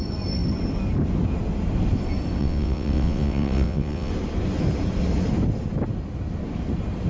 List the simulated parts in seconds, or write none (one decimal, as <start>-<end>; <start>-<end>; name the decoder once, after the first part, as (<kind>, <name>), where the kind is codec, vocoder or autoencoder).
2.4-4.1 (vocoder, WaveNeXt)